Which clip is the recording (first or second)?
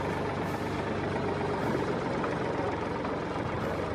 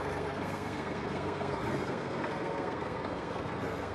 first